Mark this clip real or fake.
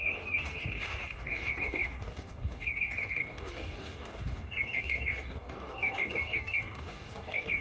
fake